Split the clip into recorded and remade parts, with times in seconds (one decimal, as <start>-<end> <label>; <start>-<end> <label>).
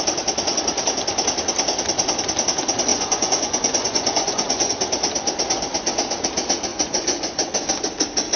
0.0-2.9 recorded; 2.9-4.7 remade; 4.7-6.7 recorded; 6.7-7.7 remade; 7.7-8.4 recorded